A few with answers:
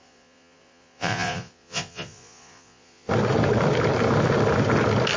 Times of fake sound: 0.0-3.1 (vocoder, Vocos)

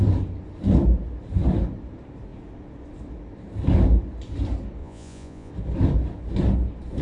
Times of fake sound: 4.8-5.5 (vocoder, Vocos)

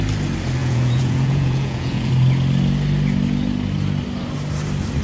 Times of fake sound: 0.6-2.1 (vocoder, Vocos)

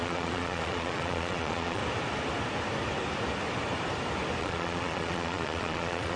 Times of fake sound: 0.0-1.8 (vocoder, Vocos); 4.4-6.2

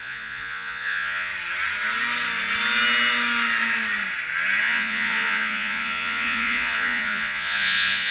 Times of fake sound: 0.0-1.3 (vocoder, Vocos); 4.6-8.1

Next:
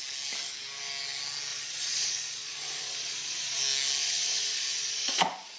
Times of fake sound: 1.5-3.6 (vocoder, Vocos); 4.0-5.6